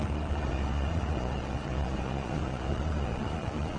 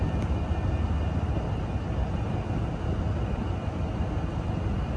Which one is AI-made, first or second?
first